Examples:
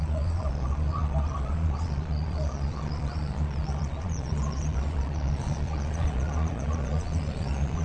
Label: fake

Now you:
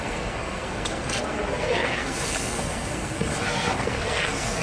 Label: fake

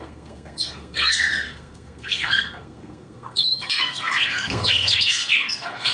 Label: fake